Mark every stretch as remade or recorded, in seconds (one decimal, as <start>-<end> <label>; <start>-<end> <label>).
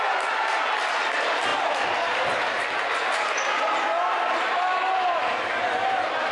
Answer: 0.0-6.3 recorded